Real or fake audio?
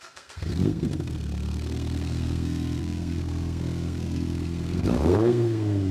fake